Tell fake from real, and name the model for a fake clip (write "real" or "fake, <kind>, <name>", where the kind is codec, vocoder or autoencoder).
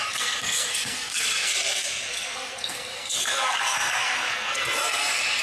fake, codec, SNAC